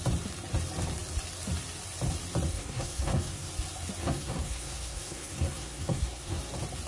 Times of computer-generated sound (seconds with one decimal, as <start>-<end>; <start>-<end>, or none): 2.5-3.5; 4.0-6.4